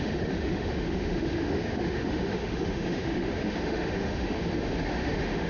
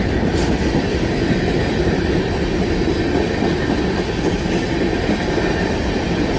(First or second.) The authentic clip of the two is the second